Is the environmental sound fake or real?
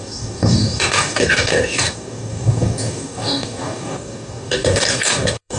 fake